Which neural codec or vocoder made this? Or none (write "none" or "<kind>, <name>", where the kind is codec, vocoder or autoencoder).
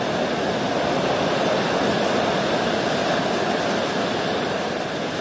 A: none